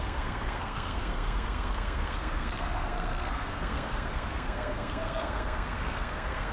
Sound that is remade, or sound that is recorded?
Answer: remade